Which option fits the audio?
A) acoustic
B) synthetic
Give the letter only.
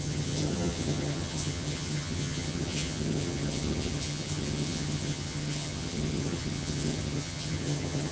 B